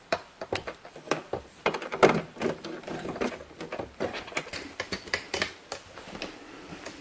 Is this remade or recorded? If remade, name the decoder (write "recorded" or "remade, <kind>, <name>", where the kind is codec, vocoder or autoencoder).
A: remade, vocoder, BigVGAN v2